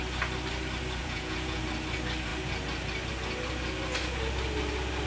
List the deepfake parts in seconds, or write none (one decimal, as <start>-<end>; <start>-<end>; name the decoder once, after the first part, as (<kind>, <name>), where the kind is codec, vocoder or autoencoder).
1.0-1.6 (vocoder, Vocos)